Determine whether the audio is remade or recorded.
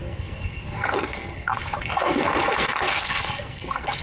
remade